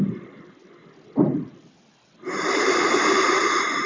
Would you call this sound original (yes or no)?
yes